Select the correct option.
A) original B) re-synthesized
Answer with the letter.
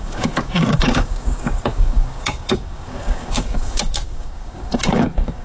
B